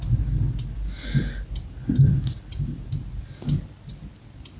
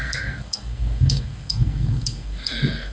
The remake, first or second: second